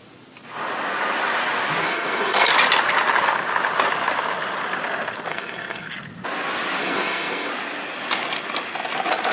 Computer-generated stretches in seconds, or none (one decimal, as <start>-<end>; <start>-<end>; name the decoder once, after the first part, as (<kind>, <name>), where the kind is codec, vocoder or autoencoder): 1.8-2.5 (codec, SNAC); 5.3-5.9; 6.8-7.5